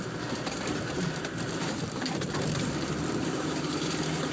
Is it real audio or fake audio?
fake